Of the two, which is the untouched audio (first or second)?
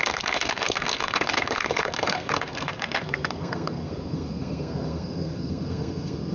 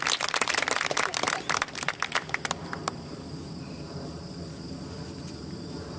second